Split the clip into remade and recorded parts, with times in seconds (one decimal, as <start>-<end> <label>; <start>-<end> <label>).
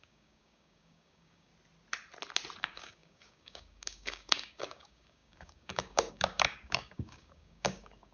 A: 0.0-1.5 remade; 1.5-2.6 recorded; 2.6-8.1 remade